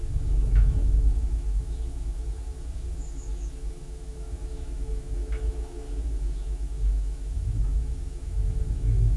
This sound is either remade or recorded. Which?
remade